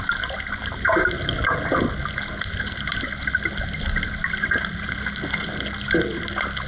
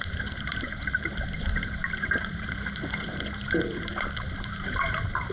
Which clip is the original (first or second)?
first